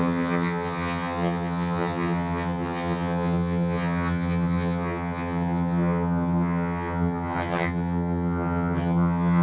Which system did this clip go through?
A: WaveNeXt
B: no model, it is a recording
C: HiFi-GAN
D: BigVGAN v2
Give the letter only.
C